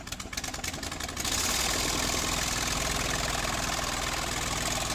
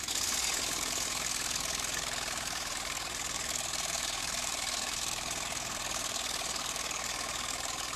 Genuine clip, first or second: first